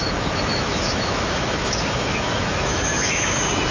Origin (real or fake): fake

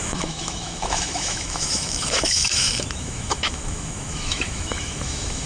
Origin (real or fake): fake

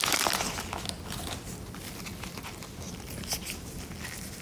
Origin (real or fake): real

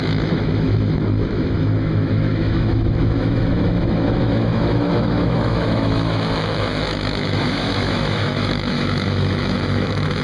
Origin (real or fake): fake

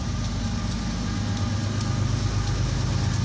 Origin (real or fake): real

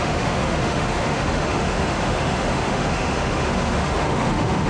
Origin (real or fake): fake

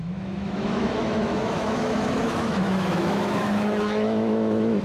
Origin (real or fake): fake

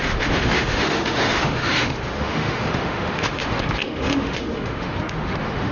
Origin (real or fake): fake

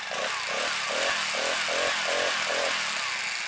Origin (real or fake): real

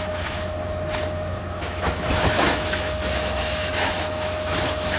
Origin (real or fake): fake